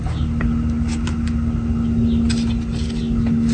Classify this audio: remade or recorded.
recorded